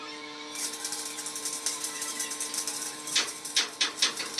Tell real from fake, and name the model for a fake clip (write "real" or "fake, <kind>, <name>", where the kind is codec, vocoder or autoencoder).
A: fake, vocoder, BigVGAN v2